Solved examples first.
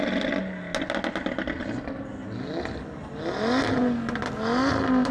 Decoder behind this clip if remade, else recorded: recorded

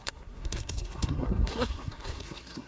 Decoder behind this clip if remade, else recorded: remade, codec, SNAC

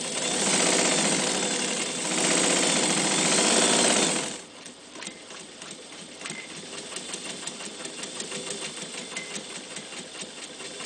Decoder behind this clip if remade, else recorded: recorded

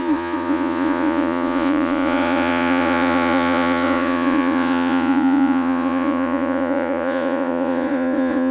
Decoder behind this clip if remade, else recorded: remade, vocoder, Vocos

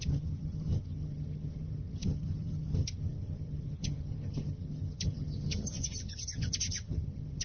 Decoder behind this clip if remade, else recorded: remade, vocoder, HiFi-GAN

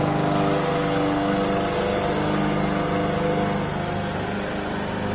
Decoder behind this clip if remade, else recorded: recorded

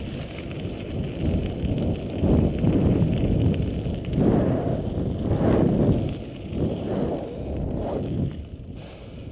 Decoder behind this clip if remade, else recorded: recorded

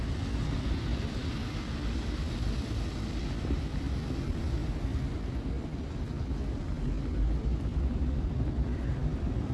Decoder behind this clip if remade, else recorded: recorded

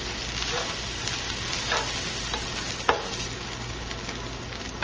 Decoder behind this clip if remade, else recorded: recorded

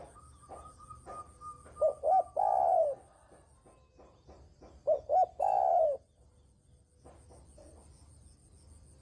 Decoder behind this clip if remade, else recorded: recorded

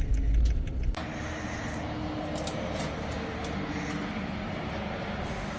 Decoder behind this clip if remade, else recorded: recorded